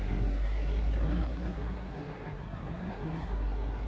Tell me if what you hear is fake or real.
fake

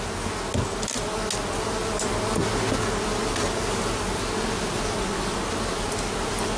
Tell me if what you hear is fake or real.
real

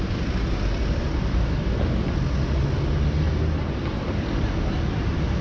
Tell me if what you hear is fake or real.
real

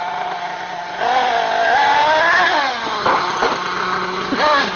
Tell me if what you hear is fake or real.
real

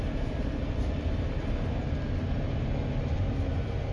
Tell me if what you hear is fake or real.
real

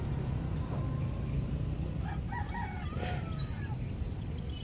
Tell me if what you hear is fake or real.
real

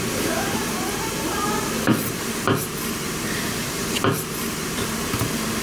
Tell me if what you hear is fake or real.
fake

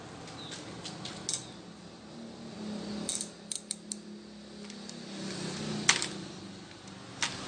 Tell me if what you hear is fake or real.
real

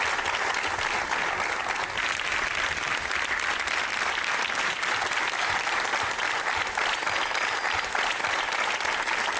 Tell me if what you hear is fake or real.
real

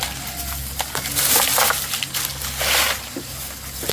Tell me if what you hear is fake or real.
real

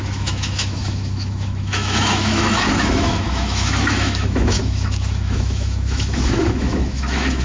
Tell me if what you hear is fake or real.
fake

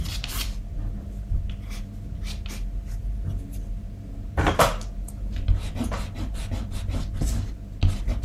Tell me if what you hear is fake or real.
real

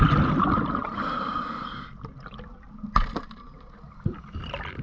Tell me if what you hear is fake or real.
real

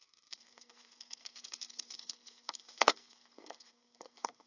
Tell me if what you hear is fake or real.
fake